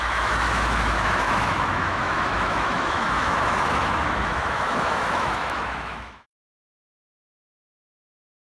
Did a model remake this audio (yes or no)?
yes